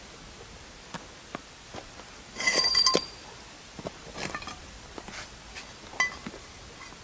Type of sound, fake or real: real